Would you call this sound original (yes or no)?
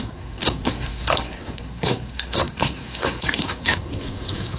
no